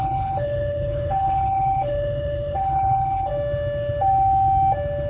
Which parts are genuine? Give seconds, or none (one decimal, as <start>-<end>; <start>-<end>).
3.3-5.1